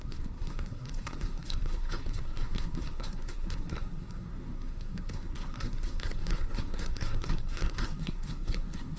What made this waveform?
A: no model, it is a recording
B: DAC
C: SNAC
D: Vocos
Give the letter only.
C